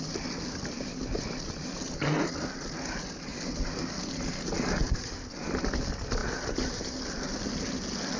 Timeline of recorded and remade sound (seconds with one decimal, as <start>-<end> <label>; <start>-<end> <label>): 0.0-8.2 recorded